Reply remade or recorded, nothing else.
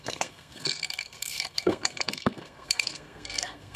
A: remade